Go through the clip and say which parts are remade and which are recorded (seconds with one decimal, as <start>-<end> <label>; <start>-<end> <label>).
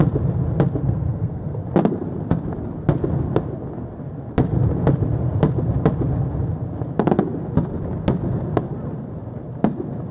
0.0-0.8 recorded; 0.8-1.6 remade; 1.6-10.1 recorded